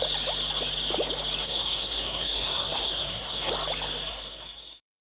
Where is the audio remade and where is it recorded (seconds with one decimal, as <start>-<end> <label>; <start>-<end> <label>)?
0.0-1.4 recorded; 1.4-3.5 remade; 3.5-4.1 recorded; 4.1-5.0 remade